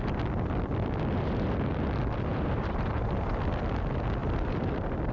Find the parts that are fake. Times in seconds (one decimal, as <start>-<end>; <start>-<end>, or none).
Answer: 2.3-3.4; 4.2-5.1